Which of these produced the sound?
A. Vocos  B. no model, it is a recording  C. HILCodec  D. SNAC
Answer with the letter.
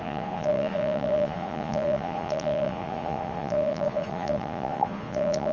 A